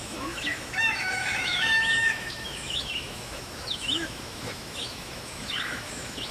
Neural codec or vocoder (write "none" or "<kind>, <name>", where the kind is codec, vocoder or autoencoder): autoencoder, DAC-VAE